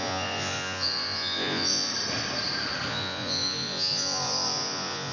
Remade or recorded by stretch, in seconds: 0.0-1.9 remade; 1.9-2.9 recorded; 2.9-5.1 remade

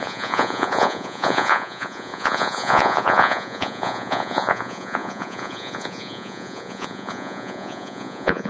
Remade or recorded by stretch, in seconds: 0.0-8.5 remade

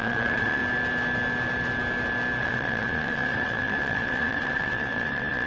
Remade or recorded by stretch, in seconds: 0.0-0.6 remade; 0.6-2.4 recorded; 2.4-5.5 remade

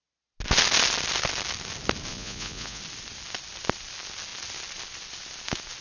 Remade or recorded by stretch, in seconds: 0.0-2.1 recorded; 2.1-2.8 remade; 2.8-5.8 recorded

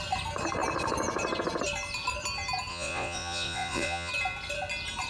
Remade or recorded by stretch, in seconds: 0.0-2.7 recorded; 2.7-4.1 remade; 4.1-5.1 recorded

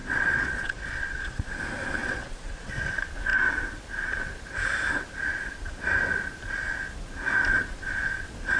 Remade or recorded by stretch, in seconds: 0.0-1.6 remade; 1.6-2.0 recorded; 2.0-2.8 remade; 2.8-8.6 recorded